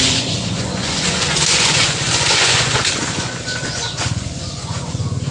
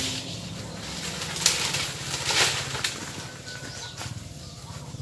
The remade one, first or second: first